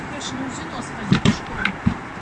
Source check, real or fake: fake